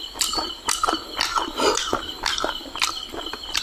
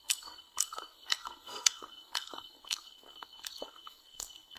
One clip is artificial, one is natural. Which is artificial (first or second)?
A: second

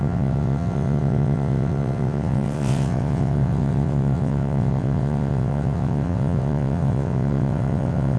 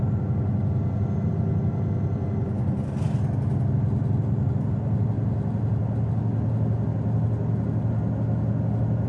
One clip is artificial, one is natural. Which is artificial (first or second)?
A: first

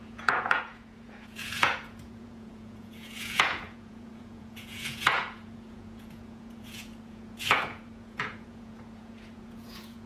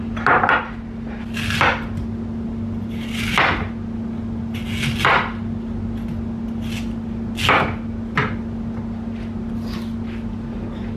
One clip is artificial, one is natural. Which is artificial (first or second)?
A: first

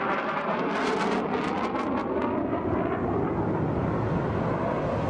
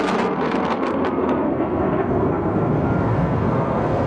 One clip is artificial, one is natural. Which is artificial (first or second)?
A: second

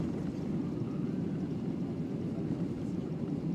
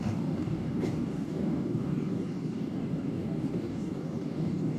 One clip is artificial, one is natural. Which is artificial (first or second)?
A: second